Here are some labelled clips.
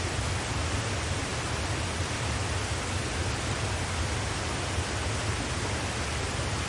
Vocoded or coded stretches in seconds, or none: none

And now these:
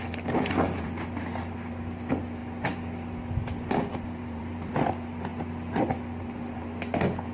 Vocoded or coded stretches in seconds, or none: 0.0-5.3; 6.2-7.3

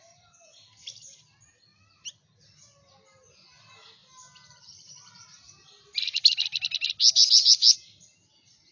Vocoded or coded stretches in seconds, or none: none

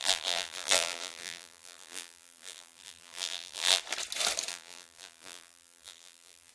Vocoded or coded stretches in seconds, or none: 0.0-3.8; 4.5-6.5

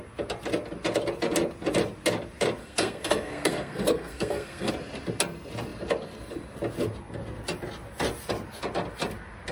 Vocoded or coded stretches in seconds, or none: 2.6-4.7

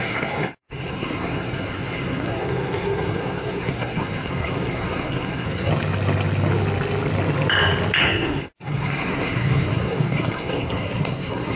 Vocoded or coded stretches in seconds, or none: 0.0-5.7; 8.0-11.6

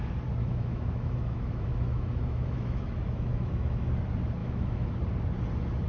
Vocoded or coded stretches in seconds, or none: 0.4-3.9; 4.4-4.9